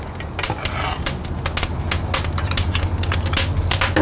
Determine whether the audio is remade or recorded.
recorded